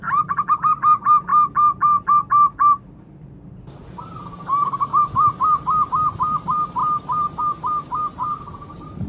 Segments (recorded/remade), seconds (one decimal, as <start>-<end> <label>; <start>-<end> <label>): 0.0-1.3 remade; 1.3-2.2 recorded; 2.2-4.9 remade; 4.9-5.9 recorded; 5.9-9.1 remade